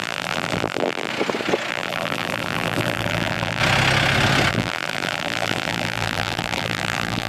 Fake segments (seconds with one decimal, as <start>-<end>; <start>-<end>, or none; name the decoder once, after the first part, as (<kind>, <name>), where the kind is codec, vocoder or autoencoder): 0.0-1.1 (vocoder, BigVGAN v2); 1.7-3.6; 4.5-7.3